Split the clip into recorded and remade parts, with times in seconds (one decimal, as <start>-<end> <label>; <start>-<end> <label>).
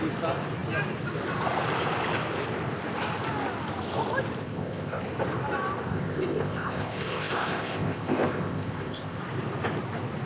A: 0.0-4.4 recorded; 4.4-5.0 remade; 5.0-5.9 recorded; 5.9-9.2 remade; 9.2-10.3 recorded